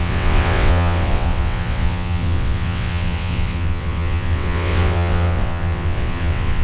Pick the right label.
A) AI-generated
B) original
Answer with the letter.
A